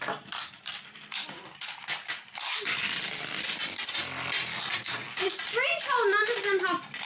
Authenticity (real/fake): fake